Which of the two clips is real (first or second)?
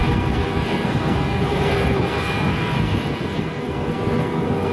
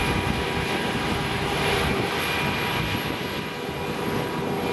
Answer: second